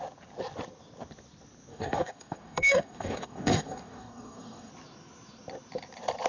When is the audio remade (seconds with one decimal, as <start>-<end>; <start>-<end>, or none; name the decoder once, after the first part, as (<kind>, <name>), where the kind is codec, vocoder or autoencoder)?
1.7-4.7 (codec, DAC)